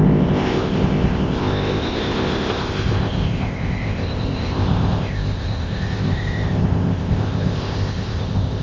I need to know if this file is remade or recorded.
remade